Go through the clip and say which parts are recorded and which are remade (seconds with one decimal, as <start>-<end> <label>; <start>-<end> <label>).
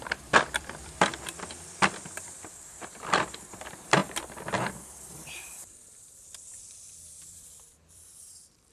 0.0-8.7 remade